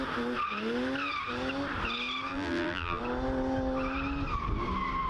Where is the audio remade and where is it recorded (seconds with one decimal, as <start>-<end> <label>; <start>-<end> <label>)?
0.0-2.3 recorded; 2.3-3.0 remade; 3.0-5.1 recorded